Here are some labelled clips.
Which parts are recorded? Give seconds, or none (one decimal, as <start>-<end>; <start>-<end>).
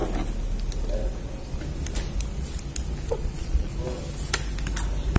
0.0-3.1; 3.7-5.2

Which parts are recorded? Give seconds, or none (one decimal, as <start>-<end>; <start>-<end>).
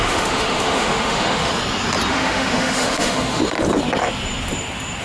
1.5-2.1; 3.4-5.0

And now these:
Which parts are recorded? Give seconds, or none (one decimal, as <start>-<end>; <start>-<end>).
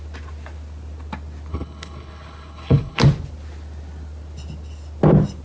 0.0-1.5; 3.0-5.4